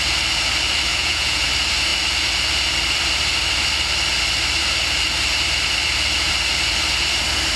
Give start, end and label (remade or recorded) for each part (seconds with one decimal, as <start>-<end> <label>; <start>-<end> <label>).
0.0-0.9 recorded; 0.9-1.5 remade; 1.5-7.6 recorded